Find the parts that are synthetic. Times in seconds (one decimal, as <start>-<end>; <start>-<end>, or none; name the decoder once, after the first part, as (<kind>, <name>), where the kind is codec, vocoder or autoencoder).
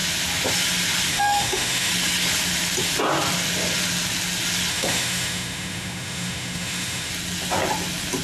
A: 1.1-1.9 (autoencoder, DAC-VAE); 4.7-7.1